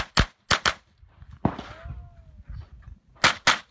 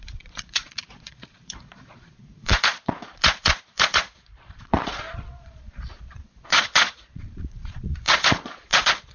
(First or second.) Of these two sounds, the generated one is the second